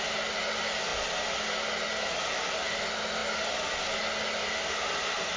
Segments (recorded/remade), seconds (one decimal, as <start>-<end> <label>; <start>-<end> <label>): 0.0-5.4 recorded